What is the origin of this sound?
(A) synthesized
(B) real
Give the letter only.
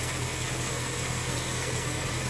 A